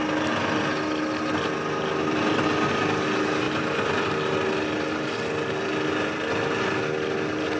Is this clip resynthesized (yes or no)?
no